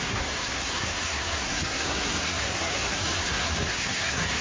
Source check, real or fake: fake